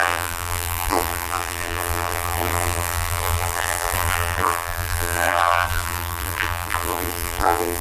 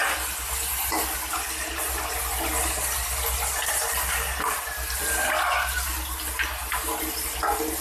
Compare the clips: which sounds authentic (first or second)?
second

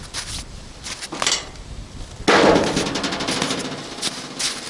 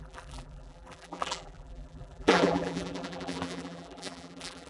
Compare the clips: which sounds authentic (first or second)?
first